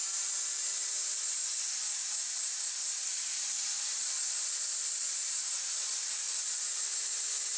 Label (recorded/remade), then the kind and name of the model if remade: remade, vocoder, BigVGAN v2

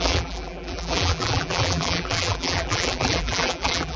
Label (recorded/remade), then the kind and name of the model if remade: remade, vocoder, BigVGAN v2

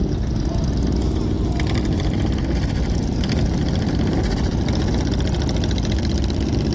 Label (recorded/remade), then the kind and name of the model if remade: recorded